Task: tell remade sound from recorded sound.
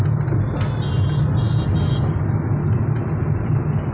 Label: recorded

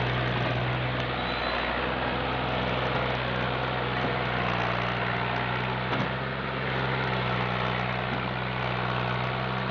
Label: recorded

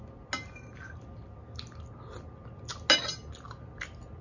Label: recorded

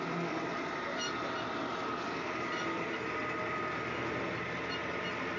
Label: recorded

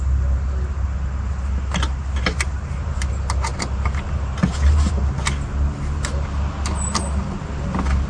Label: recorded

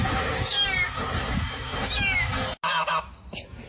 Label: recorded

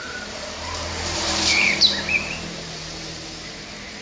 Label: remade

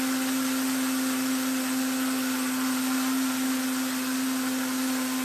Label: recorded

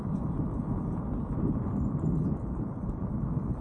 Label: recorded